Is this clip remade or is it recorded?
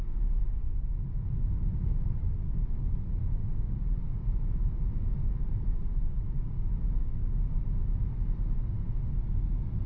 recorded